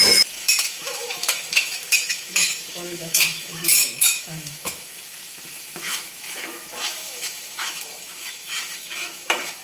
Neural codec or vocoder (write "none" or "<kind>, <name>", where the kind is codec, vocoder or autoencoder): autoencoder, DAC-VAE